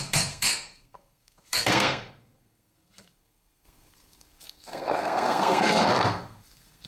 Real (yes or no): no